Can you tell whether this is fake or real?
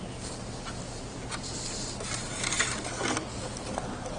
real